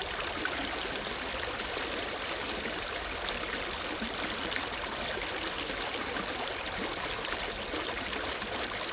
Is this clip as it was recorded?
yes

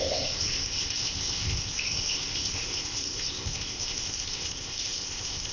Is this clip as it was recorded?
no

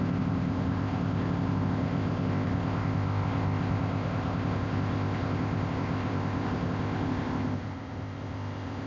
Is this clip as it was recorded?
no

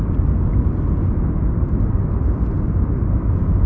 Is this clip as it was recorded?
yes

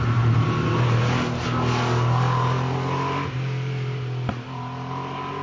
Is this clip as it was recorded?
yes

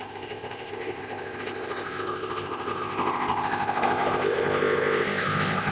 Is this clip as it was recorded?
no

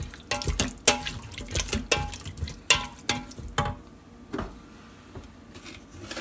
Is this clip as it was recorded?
yes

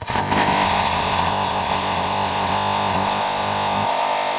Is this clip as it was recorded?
no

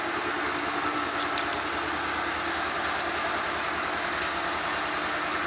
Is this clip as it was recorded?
yes